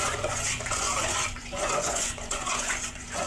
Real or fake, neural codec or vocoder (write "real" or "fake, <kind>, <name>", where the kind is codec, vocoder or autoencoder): fake, vocoder, Vocos